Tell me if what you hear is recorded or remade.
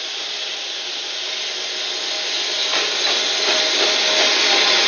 recorded